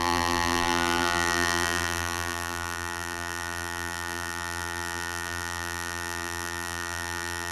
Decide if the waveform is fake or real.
fake